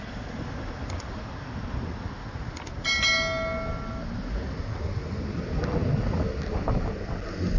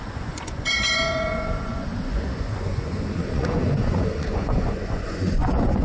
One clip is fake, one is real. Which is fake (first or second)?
second